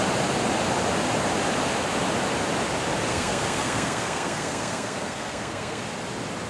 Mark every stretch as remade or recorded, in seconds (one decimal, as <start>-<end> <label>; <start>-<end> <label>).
0.0-3.1 recorded; 3.1-5.8 remade; 5.8-6.5 recorded